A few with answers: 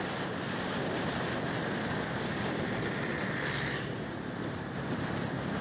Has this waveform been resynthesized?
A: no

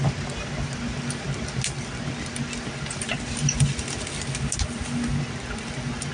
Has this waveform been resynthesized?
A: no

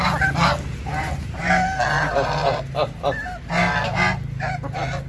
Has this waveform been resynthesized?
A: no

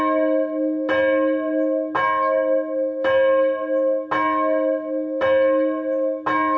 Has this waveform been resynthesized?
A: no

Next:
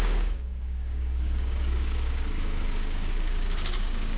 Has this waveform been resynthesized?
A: yes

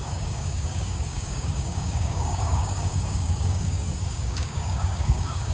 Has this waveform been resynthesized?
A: yes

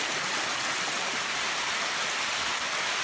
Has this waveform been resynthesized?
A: no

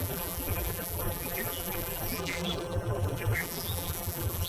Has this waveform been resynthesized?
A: yes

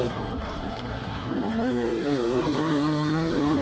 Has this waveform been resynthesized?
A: yes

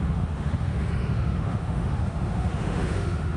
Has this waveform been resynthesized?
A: yes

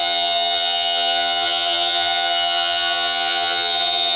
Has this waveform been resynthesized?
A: yes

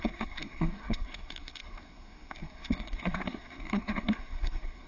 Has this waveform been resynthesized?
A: yes